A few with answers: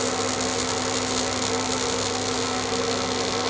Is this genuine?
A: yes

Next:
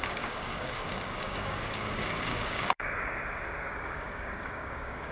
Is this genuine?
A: no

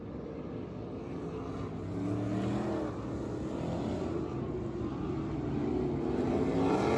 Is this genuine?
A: yes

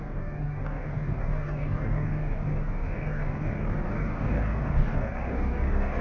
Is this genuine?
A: no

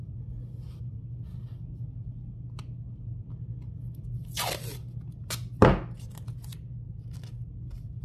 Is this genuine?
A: yes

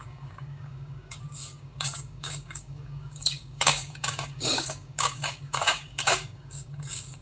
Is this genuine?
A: no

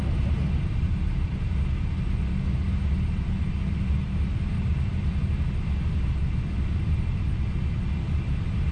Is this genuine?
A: yes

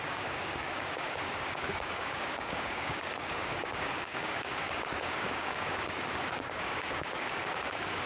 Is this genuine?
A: no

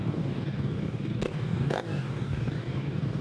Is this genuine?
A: no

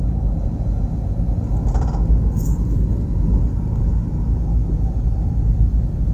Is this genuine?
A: yes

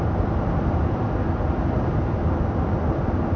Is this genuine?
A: yes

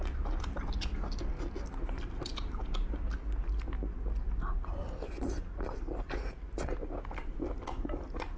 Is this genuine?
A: yes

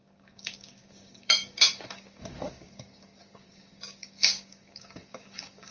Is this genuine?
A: no